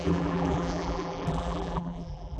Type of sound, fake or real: fake